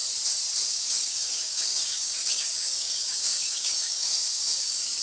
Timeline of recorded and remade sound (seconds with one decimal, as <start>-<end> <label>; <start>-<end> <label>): 0.0-0.7 recorded; 0.7-5.0 remade